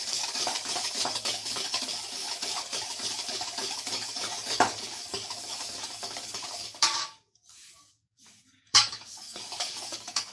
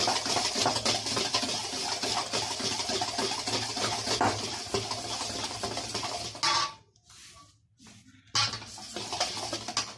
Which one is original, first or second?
second